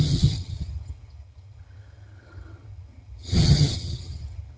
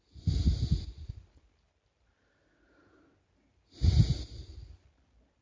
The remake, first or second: first